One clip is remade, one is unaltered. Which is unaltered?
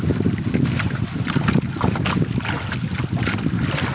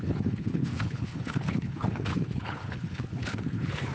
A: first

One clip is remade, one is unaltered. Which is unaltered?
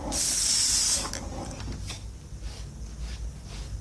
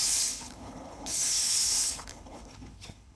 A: first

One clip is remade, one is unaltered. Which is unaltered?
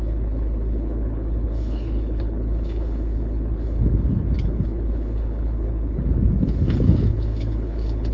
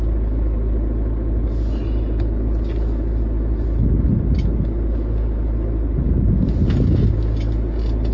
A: second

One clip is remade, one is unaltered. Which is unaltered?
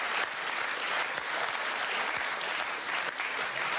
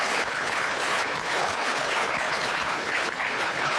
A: first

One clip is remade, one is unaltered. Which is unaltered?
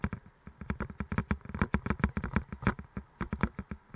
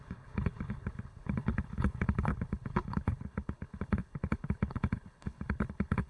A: first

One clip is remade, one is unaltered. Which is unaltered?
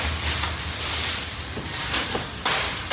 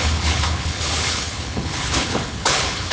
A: first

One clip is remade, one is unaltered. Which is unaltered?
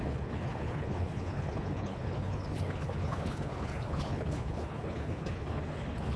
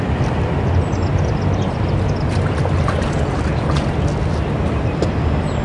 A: second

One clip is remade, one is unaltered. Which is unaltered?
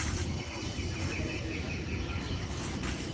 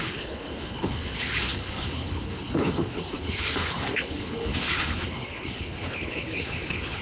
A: first